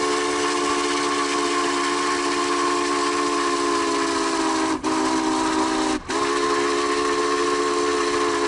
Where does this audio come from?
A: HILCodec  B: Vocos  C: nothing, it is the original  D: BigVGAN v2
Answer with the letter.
C